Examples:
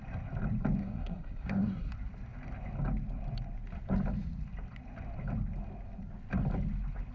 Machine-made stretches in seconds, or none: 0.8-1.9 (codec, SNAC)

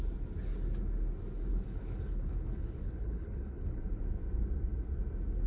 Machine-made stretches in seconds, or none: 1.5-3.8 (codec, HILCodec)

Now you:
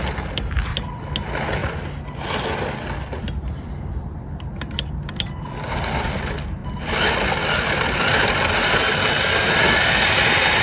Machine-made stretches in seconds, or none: none

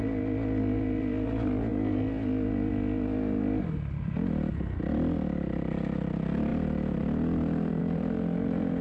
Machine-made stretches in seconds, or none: none

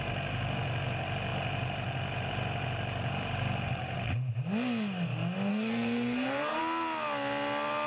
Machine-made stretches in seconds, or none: 5.5-6.6 (codec, SNAC)

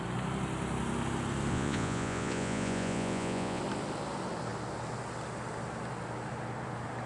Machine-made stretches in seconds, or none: 1.5-3.6 (vocoder, Vocos)